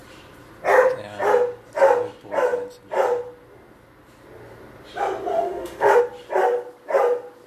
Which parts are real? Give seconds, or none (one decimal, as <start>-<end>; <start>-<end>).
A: 0.0-5.3; 6.0-7.5